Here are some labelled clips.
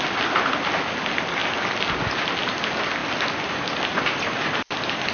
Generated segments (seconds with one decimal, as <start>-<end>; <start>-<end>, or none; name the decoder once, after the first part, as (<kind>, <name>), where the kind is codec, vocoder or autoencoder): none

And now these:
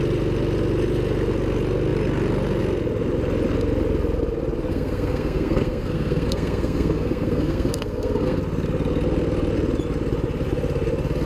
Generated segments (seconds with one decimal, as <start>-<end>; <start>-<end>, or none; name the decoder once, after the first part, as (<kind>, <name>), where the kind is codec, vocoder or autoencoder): 4.7-8.4 (codec, SNAC)

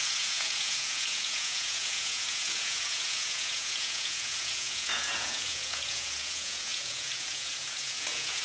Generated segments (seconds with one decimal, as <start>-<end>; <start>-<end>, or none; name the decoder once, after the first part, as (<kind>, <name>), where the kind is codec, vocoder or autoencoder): 0.0-8.4 (vocoder, Vocos)